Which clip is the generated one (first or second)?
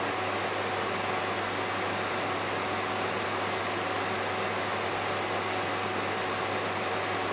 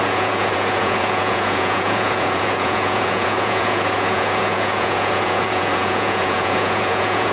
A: second